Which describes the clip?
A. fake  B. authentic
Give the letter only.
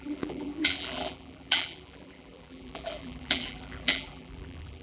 A